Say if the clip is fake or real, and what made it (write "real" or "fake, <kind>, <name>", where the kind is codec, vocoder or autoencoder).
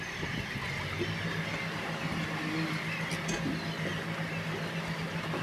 real